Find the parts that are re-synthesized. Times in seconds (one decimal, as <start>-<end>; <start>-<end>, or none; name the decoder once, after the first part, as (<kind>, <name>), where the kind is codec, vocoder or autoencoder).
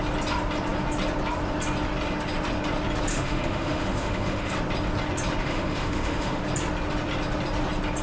3.1-4.5 (autoencoder, DAC-VAE); 5.4-6.4